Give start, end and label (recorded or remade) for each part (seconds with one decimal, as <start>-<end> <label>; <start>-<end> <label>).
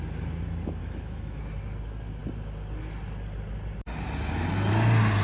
0.0-0.8 recorded; 0.8-1.4 remade; 1.4-5.2 recorded